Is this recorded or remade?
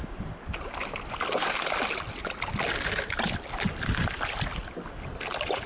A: recorded